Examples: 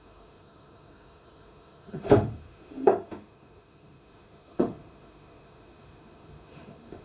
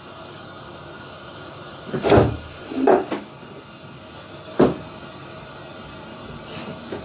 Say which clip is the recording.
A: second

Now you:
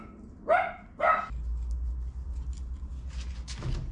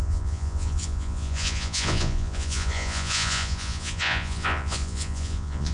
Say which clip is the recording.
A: first